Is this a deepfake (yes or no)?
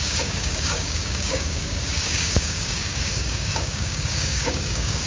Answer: yes